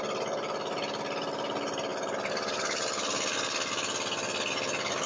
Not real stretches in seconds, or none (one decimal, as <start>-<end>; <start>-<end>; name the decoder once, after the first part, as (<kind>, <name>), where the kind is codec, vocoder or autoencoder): none